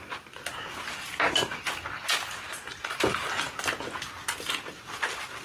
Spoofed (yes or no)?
no